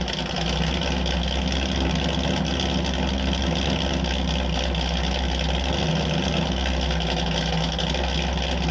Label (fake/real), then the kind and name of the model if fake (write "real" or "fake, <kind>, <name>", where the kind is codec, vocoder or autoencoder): real